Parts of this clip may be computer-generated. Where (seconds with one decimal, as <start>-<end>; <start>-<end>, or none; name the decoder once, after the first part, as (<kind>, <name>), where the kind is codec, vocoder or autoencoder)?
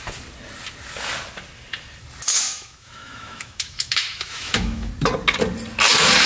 2.3-4.9 (autoencoder, DAC-VAE)